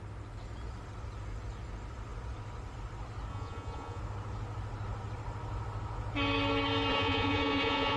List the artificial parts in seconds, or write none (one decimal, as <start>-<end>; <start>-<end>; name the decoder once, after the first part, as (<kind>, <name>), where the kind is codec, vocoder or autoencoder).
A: 3.3-4.0 (vocoder, Vocos); 6.9-8.0